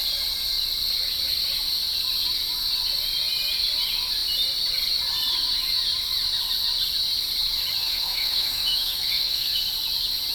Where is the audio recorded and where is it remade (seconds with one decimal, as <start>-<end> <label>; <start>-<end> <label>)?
0.0-7.8 recorded; 7.8-9.6 remade; 9.6-10.3 recorded